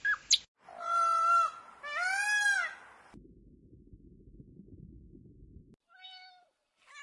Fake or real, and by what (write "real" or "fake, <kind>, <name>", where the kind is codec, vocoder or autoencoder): real